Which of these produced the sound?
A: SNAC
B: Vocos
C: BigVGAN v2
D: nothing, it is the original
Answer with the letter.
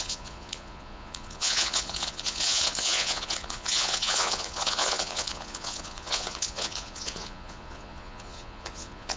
B